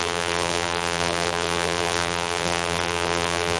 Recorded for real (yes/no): no